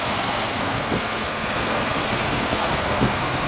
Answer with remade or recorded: remade